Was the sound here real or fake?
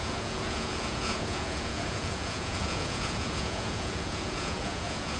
fake